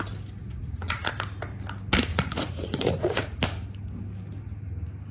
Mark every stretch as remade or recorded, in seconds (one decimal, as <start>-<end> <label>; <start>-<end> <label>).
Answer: 0.0-0.4 recorded; 0.4-1.1 remade; 1.1-2.1 recorded; 2.1-3.4 remade; 3.4-5.1 recorded